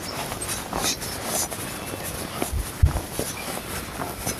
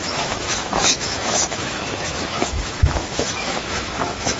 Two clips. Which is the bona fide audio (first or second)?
first